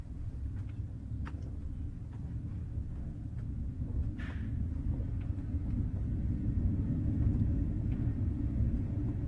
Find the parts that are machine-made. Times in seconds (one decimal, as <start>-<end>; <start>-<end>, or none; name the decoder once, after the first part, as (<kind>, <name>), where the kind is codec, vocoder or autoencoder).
none